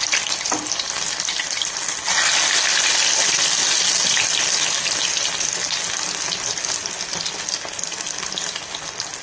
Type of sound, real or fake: real